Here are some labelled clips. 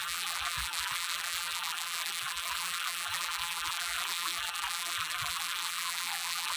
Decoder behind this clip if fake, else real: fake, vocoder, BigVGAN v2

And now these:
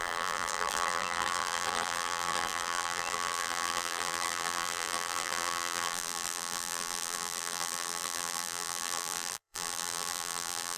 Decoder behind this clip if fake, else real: fake, vocoder, BigVGAN v2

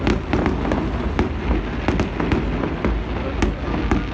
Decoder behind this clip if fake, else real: real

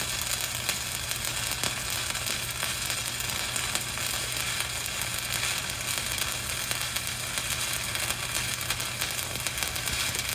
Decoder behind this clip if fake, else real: real